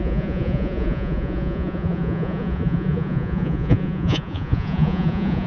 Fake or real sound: fake